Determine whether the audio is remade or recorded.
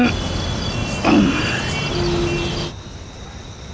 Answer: recorded